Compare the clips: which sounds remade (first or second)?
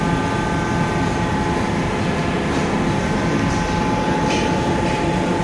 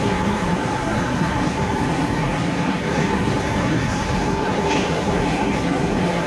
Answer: second